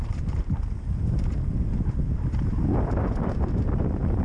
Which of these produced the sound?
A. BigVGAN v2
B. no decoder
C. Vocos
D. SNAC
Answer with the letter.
B